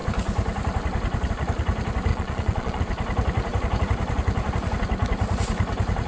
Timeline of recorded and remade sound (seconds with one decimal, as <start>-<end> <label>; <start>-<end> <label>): 0.0-2.1 recorded; 2.1-2.8 remade; 2.8-6.1 recorded